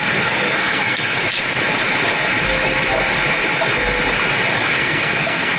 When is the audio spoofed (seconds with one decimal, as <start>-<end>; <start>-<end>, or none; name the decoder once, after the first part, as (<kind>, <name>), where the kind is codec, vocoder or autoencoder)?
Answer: 0.0-1.2 (codec, SNAC); 4.6-5.6